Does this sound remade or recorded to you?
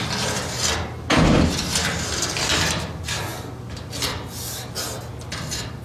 recorded